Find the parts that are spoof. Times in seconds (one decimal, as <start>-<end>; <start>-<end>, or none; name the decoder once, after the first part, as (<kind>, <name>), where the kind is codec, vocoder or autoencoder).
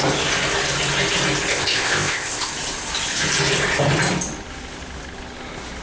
1.5-2.5 (codec, ZipCodec)